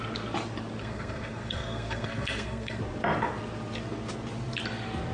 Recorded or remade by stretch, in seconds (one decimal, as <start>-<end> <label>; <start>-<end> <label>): 0.0-0.8 recorded; 0.8-2.8 remade; 2.8-5.1 recorded